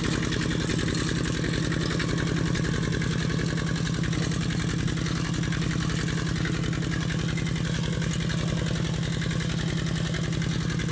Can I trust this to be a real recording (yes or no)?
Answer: yes